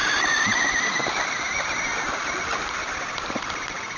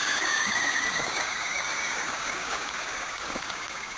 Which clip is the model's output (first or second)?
second